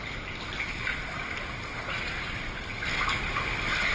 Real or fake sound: real